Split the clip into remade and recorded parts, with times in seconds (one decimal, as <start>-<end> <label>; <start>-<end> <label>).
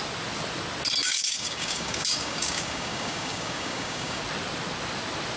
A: 0.0-1.0 recorded; 1.0-4.2 remade; 4.2-5.4 recorded